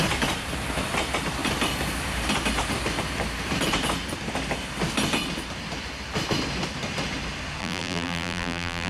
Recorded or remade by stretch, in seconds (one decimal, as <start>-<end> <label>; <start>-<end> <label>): 0.0-7.6 recorded; 7.6-8.9 remade